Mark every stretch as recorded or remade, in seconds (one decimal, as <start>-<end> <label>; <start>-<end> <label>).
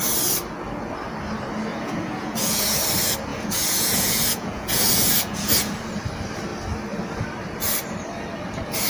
0.0-1.7 recorded; 1.7-2.8 remade; 2.8-3.3 recorded; 3.3-5.7 remade; 5.7-8.9 recorded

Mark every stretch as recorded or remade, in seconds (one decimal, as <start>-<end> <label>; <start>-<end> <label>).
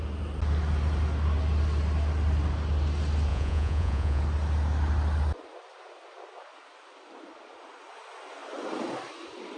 0.0-3.3 recorded; 3.3-4.2 remade; 4.2-9.6 recorded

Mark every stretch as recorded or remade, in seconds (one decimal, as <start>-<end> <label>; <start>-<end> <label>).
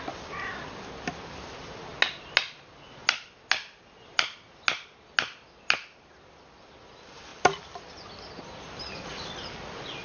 0.0-10.0 recorded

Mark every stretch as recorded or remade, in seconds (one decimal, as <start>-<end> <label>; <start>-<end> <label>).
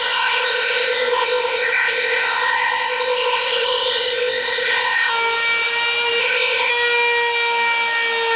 0.0-5.1 remade; 5.1-6.2 recorded; 6.2-6.7 remade; 6.7-8.4 recorded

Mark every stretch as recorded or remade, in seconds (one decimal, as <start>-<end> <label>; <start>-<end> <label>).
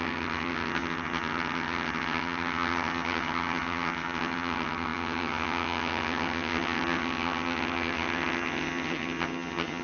0.0-9.8 remade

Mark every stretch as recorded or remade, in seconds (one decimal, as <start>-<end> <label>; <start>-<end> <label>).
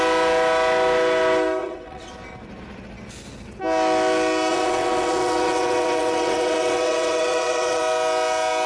0.0-1.6 recorded; 1.6-2.1 remade; 2.1-4.5 recorded; 4.5-7.8 remade; 7.8-8.7 recorded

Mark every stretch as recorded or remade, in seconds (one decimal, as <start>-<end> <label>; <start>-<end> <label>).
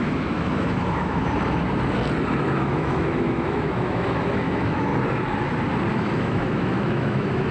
0.0-1.2 remade; 1.2-2.4 recorded; 2.4-4.9 remade; 4.9-5.9 recorded; 5.9-7.5 remade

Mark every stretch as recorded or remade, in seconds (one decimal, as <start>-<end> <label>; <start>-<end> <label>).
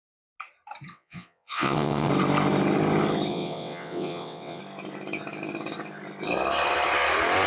0.0-0.9 recorded; 0.9-2.1 remade; 2.1-3.3 recorded; 3.3-4.6 remade; 4.6-7.5 recorded